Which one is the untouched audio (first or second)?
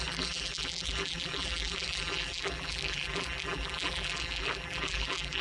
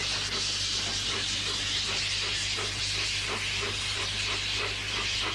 second